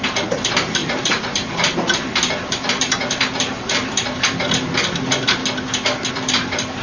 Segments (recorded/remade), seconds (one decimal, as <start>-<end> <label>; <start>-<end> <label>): 0.0-5.4 remade; 5.4-6.1 recorded; 6.1-6.8 remade